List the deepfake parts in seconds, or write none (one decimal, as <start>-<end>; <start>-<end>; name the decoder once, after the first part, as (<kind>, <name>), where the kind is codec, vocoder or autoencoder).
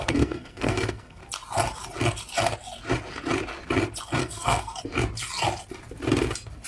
0.0-1.2 (codec, SNAC); 4.2-4.8